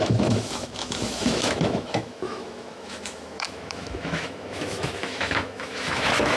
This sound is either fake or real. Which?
fake